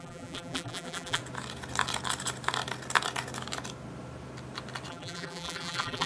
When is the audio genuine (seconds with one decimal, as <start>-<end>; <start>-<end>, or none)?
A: 1.2-4.9